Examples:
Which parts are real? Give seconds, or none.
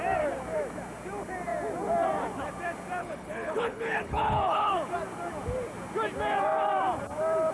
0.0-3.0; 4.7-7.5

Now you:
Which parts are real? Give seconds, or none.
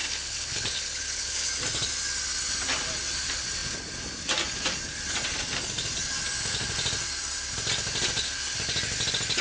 1.5-9.4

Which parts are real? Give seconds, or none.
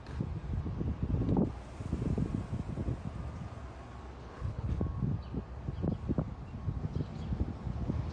0.0-4.2; 4.8-8.1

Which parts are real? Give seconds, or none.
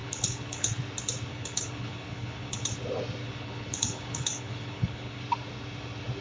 0.7-1.3; 2.7-3.2; 5.2-6.2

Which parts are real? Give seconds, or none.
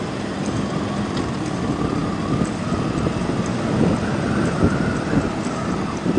0.0-6.2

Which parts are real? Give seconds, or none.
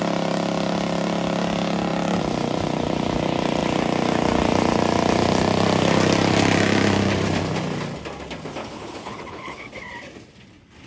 0.0-8.6; 9.6-10.9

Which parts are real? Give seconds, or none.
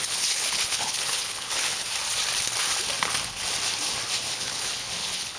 1.8-4.3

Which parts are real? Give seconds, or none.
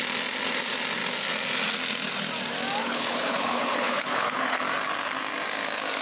0.0-2.8; 4.6-6.0